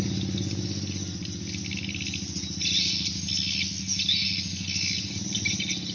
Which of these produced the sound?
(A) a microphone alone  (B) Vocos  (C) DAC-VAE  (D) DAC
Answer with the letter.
A